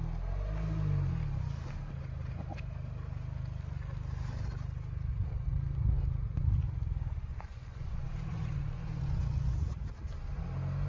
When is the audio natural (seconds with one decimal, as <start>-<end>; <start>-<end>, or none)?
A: 0.0-7.3; 9.5-10.9